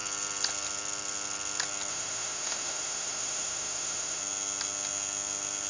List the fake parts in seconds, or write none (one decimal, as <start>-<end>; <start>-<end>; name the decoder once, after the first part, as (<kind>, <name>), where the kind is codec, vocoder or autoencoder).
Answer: 1.9-4.2 (autoencoder, DAC-VAE)